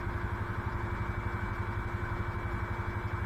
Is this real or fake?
real